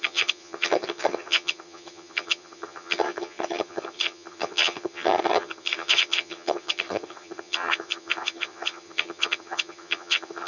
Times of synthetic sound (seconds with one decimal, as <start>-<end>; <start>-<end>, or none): 0.0-10.5